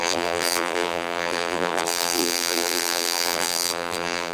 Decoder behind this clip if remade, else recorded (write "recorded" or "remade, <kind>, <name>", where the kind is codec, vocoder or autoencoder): remade, vocoder, BigVGAN v2